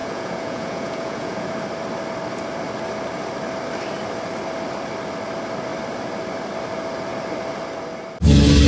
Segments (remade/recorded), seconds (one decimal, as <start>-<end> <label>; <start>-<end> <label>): 0.0-1.5 remade; 1.5-8.7 recorded